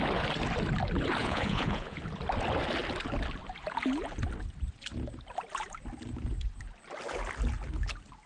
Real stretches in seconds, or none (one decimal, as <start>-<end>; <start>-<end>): 0.0-1.2; 2.0-8.3

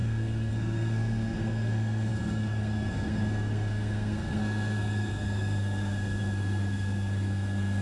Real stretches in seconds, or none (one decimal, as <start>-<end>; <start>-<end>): none

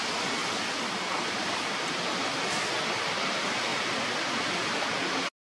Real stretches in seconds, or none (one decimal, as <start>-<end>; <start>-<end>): 0.0-0.4; 1.6-3.7; 5.0-5.5

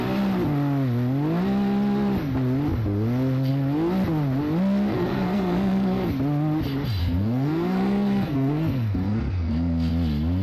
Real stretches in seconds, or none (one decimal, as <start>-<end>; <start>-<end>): 0.0-4.9; 6.1-7.0; 9.9-10.4

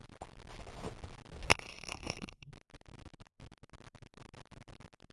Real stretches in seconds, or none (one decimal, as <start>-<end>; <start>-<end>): 0.0-1.5; 2.5-5.1

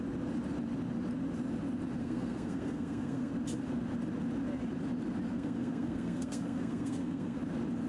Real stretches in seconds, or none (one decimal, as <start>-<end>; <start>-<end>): 0.0-2.0; 3.3-5.3; 7.4-7.9

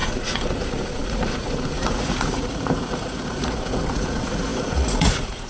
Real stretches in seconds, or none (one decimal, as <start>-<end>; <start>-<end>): none

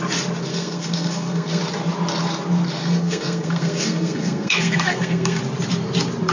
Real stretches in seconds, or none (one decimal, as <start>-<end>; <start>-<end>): 0.0-0.5; 1.6-2.8; 5.4-6.3